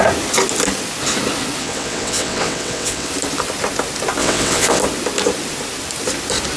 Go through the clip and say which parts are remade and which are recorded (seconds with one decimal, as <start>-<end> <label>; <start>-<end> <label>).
0.0-1.6 recorded; 1.6-3.1 remade; 3.1-4.2 recorded; 4.2-4.8 remade; 4.8-6.6 recorded